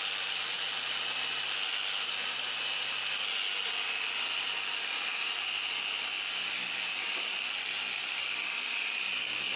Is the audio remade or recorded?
recorded